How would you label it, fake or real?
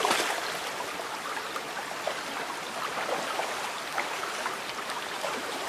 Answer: real